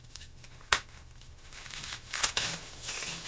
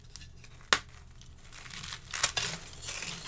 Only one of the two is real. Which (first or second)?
second